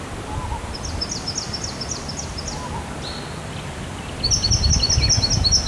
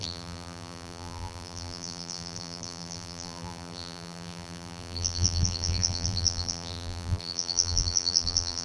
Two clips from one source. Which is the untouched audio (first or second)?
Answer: first